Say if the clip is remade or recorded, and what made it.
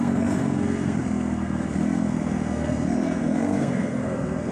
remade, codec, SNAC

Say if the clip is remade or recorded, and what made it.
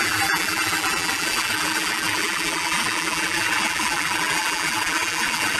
remade, vocoder, BigVGAN v2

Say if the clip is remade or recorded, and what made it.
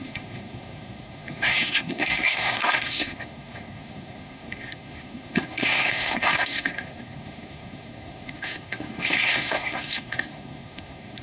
remade, codec, SNAC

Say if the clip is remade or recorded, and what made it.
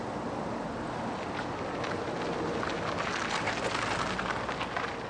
recorded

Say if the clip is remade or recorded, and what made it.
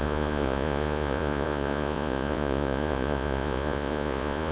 remade, vocoder, Vocos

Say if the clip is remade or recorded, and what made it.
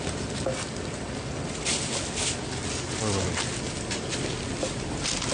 recorded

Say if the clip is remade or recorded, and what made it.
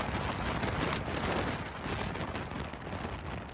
recorded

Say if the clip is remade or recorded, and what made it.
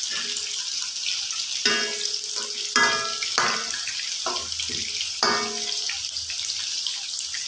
recorded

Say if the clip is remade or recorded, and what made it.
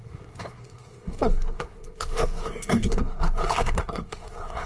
remade, codec, SNAC